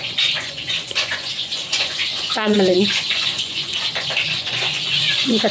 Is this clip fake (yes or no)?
yes